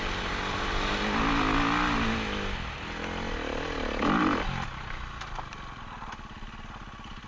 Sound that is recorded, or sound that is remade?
recorded